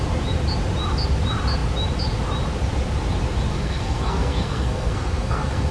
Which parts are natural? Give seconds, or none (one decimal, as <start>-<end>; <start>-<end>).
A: 0.0-3.5